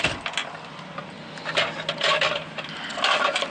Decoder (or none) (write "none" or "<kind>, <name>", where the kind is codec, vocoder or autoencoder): none